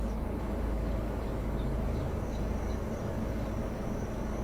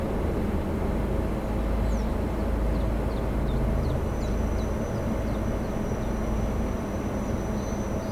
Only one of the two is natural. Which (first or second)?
second